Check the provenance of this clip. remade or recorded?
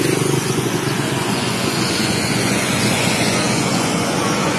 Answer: remade